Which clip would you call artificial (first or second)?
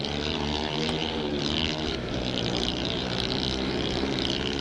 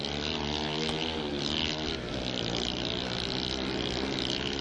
first